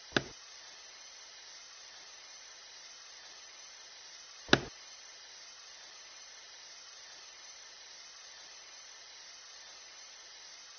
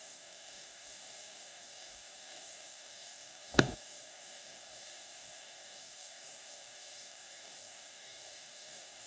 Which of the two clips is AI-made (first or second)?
second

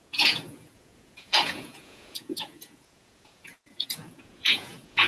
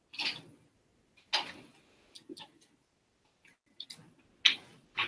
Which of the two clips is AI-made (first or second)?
first